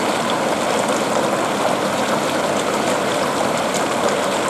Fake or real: real